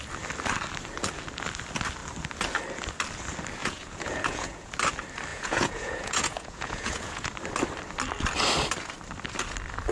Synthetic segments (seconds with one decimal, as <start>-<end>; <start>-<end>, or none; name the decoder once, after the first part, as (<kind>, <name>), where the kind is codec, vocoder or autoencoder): 3.6-4.7 (vocoder, Vocos); 5.3-7.3